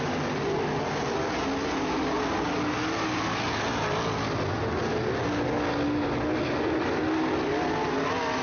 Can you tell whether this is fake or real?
real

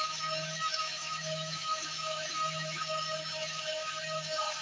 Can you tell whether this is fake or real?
fake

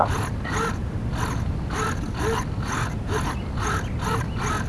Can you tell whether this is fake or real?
real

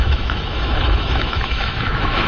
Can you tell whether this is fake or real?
fake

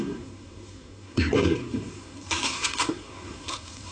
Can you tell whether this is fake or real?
fake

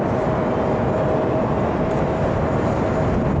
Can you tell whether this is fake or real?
real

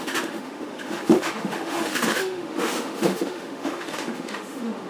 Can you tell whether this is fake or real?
fake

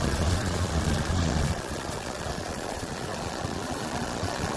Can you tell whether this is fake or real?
fake